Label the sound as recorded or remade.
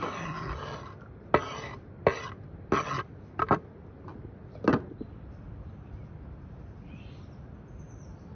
recorded